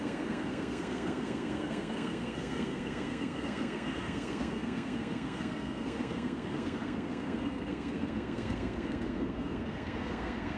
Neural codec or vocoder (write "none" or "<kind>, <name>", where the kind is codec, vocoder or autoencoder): codec, SNAC